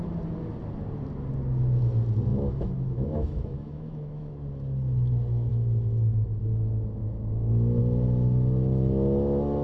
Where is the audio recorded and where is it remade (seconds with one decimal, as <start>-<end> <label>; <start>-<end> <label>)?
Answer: 0.0-2.3 recorded; 2.3-4.3 remade; 4.3-7.0 recorded; 7.0-7.8 remade; 7.8-9.6 recorded